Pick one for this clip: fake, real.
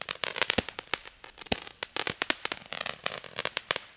real